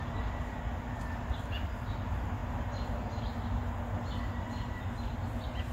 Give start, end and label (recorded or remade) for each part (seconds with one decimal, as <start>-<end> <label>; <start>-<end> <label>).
0.0-5.7 recorded